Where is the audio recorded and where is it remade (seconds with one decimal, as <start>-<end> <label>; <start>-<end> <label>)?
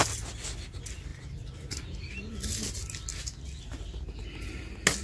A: 0.0-5.0 recorded